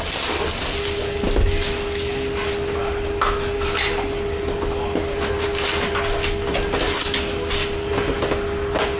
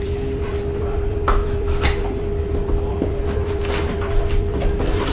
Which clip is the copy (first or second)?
second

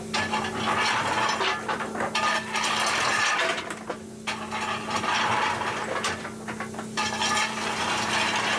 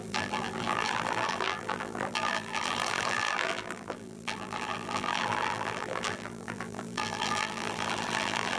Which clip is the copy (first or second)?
second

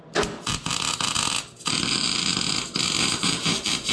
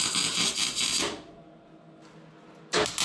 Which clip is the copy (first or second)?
first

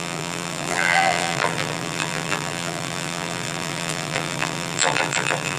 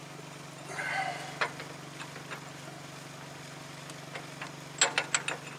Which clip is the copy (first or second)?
first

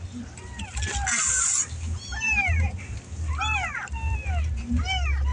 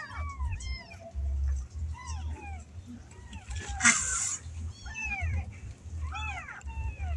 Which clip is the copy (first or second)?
second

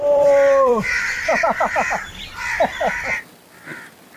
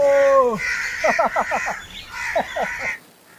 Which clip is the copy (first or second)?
first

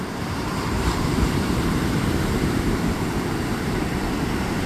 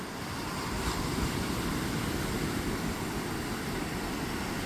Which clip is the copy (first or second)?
first